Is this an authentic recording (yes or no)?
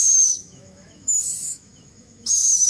no